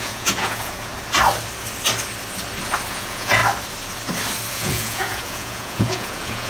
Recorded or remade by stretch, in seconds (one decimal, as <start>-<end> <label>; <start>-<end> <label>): 0.0-0.9 remade; 0.9-2.9 recorded; 2.9-3.4 remade; 3.4-4.5 recorded; 4.5-6.5 remade